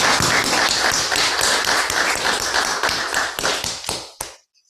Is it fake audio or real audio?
real